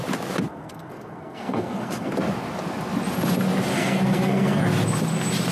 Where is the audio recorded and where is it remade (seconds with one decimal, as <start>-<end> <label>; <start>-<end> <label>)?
0.0-0.5 recorded; 0.5-2.1 remade; 2.1-3.7 recorded; 3.7-4.6 remade; 4.6-5.5 recorded